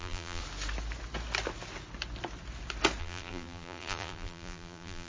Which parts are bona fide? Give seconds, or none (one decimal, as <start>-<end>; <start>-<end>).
0.4-3.0